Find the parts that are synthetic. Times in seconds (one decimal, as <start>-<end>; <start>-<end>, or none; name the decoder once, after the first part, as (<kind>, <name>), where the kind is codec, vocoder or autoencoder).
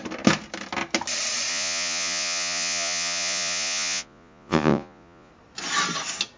1.5-5.3 (vocoder, Vocos)